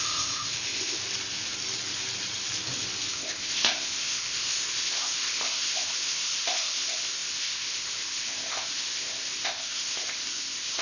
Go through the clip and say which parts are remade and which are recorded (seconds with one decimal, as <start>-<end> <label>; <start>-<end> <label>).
0.0-1.0 remade; 1.0-3.1 recorded; 3.1-10.8 remade